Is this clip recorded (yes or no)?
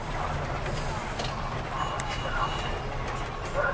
yes